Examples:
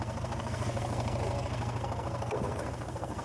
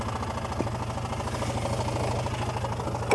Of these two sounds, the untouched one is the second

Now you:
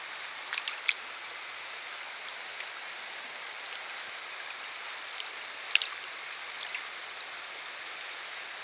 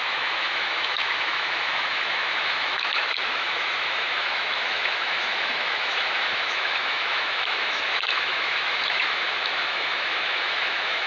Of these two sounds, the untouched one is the first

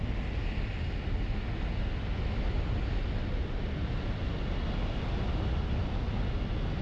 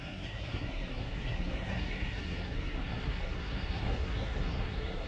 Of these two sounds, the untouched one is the first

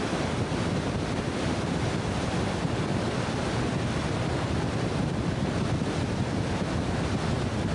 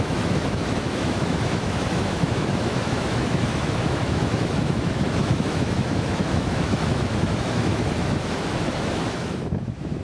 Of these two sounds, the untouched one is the first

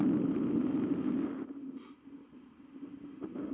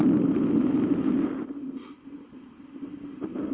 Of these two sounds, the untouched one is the first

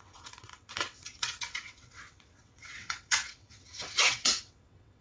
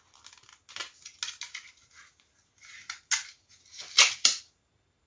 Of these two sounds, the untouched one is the second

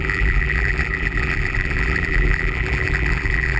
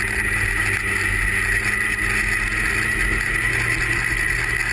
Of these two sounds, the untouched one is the second